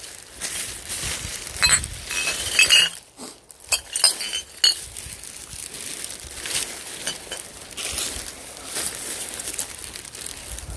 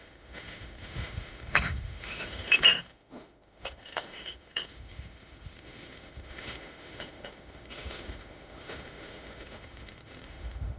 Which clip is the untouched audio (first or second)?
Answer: first